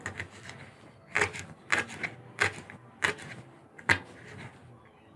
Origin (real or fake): real